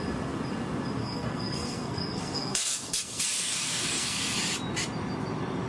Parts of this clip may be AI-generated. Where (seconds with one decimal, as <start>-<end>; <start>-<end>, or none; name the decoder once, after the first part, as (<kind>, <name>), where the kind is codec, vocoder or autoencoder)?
1.0-4.4 (codec, SNAC)